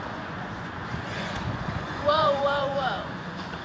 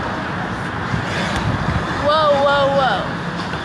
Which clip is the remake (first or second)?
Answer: first